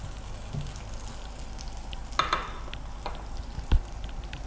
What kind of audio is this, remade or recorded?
recorded